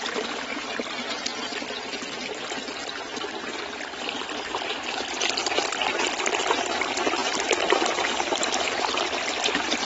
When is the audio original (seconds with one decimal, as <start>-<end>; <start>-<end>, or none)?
0.0-7.2; 8.8-9.8